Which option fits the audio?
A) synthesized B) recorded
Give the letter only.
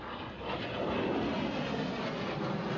B